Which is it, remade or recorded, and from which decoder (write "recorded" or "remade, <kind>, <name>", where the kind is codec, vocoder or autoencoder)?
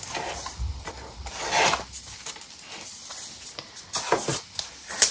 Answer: recorded